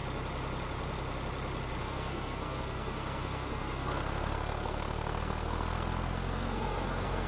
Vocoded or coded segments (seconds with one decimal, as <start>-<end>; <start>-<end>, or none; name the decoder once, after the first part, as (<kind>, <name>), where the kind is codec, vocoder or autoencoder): 1.8-7.3 (codec, SNAC)